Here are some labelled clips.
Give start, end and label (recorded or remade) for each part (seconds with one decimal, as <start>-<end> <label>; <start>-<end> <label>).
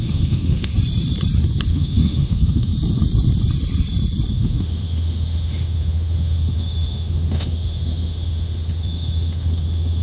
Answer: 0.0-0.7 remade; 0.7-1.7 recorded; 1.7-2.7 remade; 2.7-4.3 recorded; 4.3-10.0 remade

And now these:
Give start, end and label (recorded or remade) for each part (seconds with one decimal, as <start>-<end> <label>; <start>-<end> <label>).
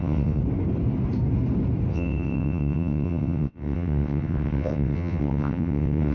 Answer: 0.0-0.4 remade; 0.4-1.9 recorded; 1.9-6.1 remade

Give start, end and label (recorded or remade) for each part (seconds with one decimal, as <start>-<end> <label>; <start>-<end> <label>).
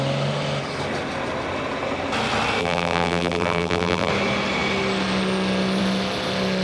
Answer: 0.0-2.6 recorded; 2.6-4.1 remade; 4.1-6.6 recorded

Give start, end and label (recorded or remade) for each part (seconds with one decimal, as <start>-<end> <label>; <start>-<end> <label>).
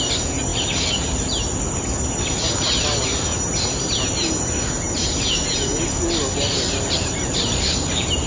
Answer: 0.0-6.5 recorded; 6.5-8.3 remade